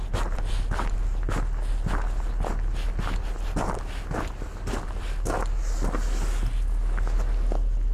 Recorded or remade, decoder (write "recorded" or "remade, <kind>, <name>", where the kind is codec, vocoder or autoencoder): recorded